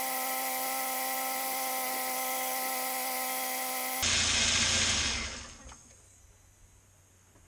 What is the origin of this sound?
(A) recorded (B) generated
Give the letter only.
A